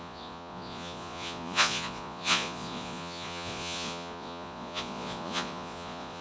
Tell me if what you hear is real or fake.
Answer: fake